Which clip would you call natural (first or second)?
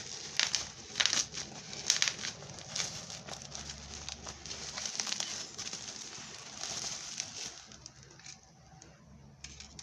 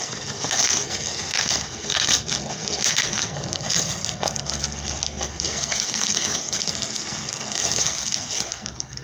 first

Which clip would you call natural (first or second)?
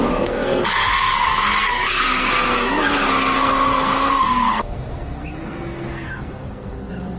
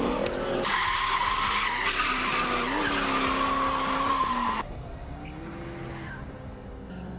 second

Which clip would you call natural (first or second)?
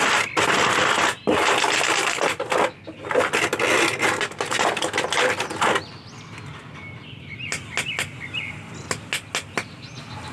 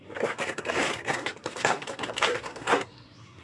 first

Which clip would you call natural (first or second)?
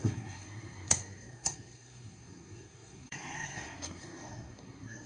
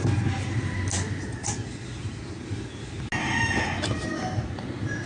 second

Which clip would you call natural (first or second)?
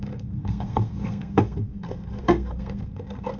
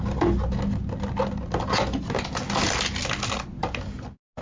second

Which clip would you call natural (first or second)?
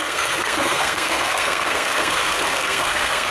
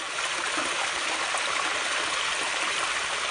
second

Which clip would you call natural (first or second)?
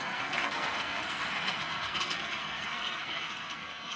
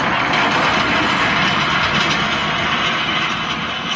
second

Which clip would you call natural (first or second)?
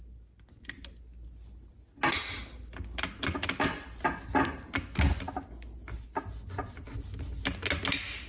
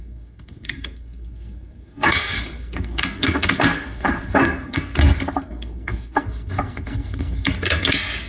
first